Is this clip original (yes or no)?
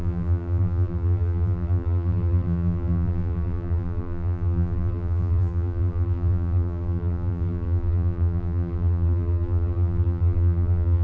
no